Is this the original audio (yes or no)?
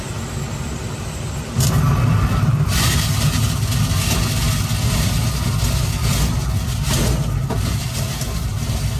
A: yes